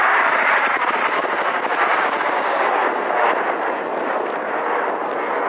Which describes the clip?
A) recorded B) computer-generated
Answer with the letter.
A